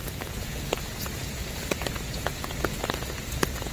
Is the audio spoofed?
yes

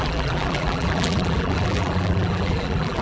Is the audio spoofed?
yes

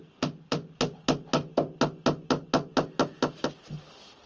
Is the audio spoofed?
no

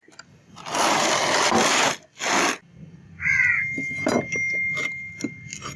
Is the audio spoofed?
no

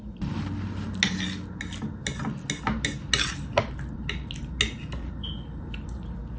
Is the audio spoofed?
no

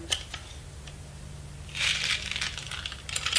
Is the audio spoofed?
no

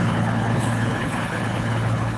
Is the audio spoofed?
yes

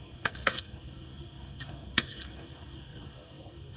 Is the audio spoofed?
yes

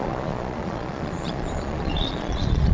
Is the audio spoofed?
yes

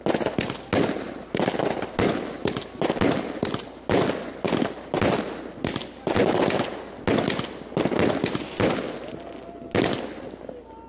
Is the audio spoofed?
no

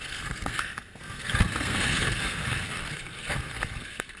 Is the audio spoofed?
yes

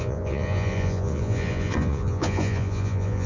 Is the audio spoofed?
yes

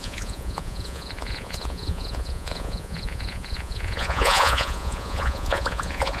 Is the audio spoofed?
yes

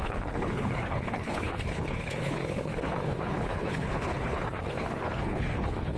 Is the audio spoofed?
yes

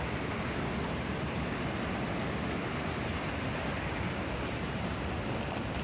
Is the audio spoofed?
no